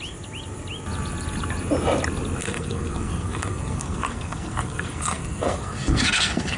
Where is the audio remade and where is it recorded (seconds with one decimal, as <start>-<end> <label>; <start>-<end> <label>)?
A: 0.0-2.4 recorded; 2.4-6.6 remade